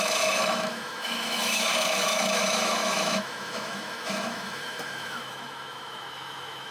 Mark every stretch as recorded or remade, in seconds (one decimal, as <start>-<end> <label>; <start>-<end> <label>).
0.0-6.7 remade